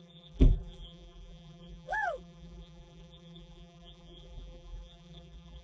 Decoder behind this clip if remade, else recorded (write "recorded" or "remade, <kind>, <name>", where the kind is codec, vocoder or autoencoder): remade, vocoder, BigVGAN v2